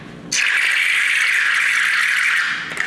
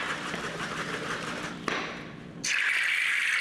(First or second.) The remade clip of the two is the second